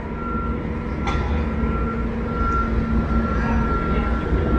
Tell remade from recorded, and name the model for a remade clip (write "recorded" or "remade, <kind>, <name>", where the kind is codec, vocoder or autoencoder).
recorded